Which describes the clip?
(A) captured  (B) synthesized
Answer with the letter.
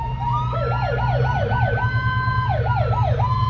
A